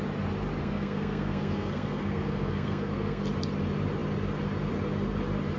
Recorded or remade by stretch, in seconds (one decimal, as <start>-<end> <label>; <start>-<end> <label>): 0.0-0.6 recorded; 0.6-3.2 remade; 3.2-5.6 recorded